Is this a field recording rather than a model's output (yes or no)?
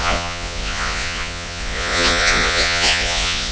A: no